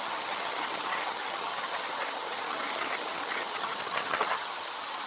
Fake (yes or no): yes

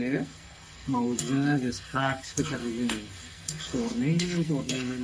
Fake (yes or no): yes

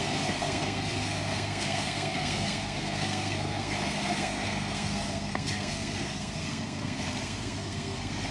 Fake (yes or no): yes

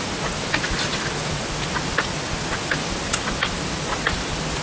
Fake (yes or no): no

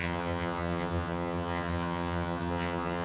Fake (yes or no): yes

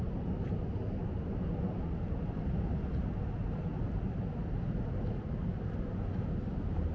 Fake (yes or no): no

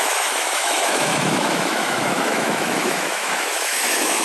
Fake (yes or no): yes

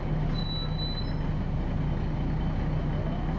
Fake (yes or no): no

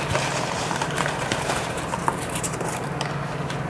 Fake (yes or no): yes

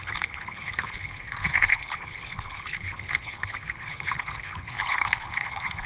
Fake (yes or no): yes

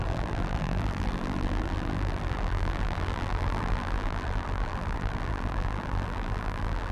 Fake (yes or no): yes